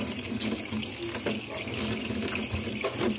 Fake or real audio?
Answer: real